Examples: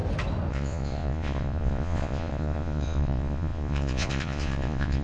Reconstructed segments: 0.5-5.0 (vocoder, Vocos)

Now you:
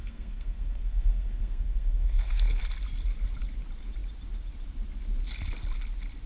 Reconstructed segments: 0.0-2.6 (codec, SNAC)

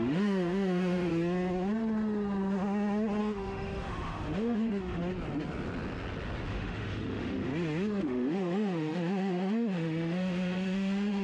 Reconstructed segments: 0.0-1.1 (autoencoder, DAC-VAE); 3.2-5.0; 6.5-7.5; 8.0-11.2

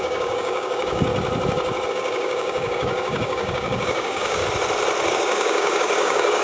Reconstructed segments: 0.0-1.1 (codec, DAC); 1.9-4.4; 5.1-6.4